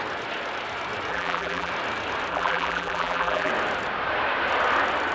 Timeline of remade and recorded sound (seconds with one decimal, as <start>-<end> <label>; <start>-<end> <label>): 0.0-1.1 recorded; 1.1-1.7 remade; 1.7-2.3 recorded; 2.3-3.5 remade; 3.5-5.1 recorded